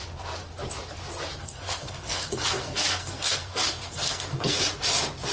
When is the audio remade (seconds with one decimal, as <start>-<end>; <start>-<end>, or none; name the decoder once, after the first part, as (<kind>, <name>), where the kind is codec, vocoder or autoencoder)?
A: 1.4-4.6 (codec, SNAC)